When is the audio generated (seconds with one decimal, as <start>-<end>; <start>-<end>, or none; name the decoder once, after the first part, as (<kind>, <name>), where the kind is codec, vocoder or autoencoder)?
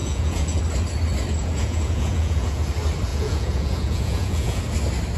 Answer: 0.0-0.6 (vocoder, Vocos); 1.4-2.7; 3.1-4.6